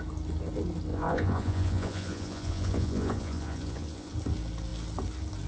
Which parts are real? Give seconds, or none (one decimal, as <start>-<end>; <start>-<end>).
0.0-0.9; 4.1-5.5

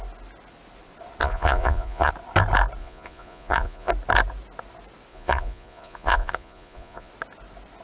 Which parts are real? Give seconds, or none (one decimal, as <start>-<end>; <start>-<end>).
0.0-1.2; 2.1-2.8; 3.9-5.1; 7.1-7.8

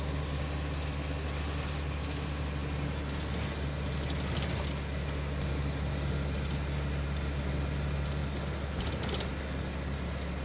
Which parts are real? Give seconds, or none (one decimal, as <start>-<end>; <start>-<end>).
0.0-10.4

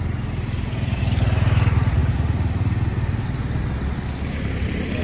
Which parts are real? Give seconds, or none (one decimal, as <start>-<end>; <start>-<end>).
0.0-5.0

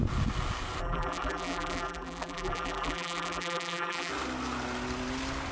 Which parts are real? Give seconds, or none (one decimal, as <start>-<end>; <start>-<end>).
0.0-0.8; 4.1-5.5

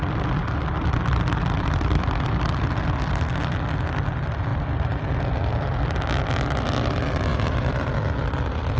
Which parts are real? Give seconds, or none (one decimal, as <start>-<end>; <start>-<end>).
0.0-7.3; 7.9-8.8

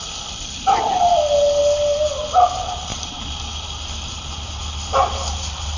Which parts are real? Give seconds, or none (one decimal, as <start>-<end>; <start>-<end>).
0.0-5.8